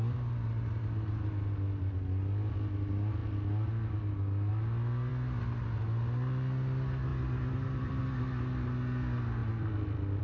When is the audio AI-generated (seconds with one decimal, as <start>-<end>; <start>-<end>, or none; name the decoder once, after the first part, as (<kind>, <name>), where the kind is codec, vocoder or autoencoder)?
7.1-8.0 (vocoder, BigVGAN v2); 9.4-10.2